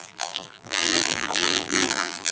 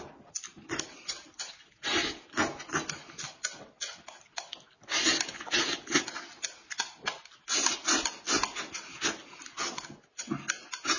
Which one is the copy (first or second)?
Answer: first